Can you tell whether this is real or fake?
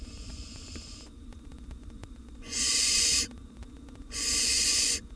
fake